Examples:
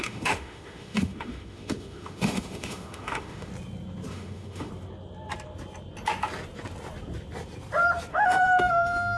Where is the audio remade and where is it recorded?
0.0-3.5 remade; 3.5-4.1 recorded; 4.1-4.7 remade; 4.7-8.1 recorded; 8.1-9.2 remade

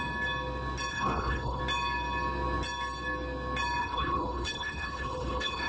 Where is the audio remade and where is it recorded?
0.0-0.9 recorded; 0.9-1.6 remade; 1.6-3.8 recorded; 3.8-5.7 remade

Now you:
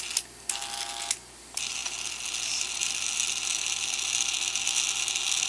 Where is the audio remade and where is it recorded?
0.0-5.5 recorded